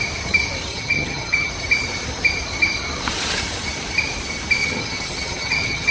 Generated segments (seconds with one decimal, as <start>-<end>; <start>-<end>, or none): 0.7-1.5; 4.6-5.9